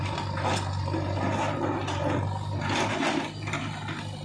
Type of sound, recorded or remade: recorded